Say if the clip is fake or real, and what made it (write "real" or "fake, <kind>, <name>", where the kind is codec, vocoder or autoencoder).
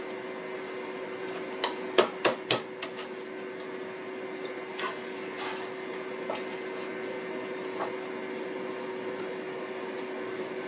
real